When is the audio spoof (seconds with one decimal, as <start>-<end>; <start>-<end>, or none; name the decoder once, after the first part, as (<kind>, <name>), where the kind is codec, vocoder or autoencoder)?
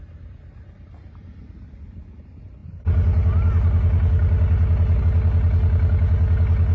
none